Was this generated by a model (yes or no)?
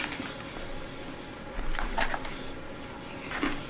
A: no